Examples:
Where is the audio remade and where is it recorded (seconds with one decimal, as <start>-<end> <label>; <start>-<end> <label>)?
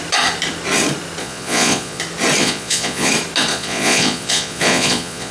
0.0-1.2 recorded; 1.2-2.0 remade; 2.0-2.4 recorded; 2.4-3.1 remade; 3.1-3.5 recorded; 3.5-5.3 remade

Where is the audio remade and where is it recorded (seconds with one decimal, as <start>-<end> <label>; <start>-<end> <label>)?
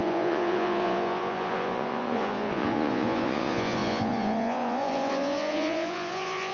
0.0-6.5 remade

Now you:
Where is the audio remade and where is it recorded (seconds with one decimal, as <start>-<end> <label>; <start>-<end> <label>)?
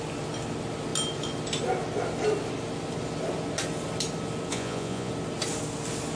0.0-4.5 recorded; 4.5-5.1 remade; 5.1-6.2 recorded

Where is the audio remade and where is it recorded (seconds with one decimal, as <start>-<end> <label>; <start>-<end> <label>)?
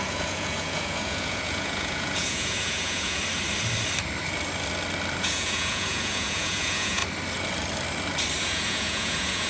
0.0-3.2 remade; 3.2-5.2 recorded; 5.2-7.0 remade; 7.0-8.4 recorded; 8.4-9.5 remade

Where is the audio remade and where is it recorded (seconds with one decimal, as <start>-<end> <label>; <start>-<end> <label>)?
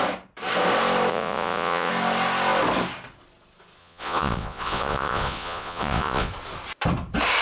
0.0-1.1 recorded; 1.1-1.9 remade; 1.9-3.8 recorded; 3.8-6.3 remade; 6.3-7.4 recorded